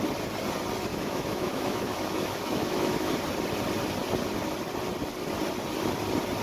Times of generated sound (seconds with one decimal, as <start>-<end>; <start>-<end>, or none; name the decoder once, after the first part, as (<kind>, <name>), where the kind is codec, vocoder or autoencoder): 0.9-3.1 (autoencoder, DAC-VAE)